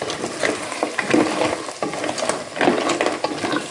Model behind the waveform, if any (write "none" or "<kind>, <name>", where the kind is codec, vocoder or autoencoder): none